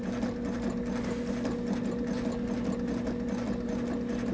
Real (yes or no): yes